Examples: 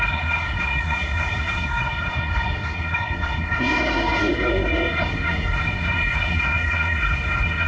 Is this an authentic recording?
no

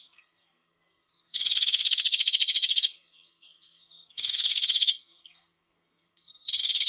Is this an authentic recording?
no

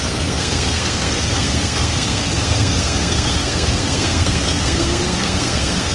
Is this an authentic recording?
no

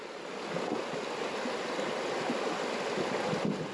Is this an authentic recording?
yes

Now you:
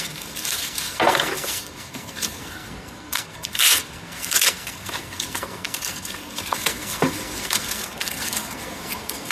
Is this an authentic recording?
no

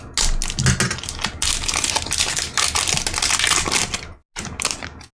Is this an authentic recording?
yes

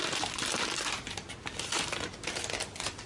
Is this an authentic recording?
yes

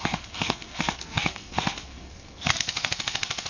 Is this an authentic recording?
no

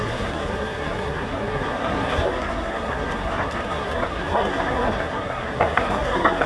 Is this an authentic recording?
no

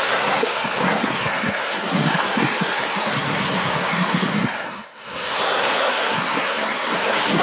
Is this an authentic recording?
no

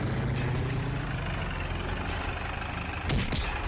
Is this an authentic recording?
yes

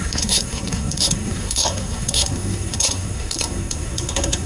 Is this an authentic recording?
no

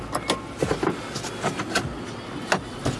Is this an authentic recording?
yes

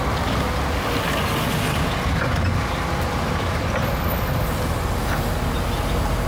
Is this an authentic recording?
yes